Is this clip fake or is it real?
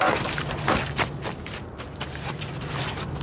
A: real